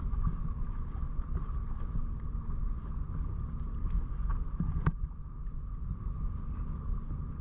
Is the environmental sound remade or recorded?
recorded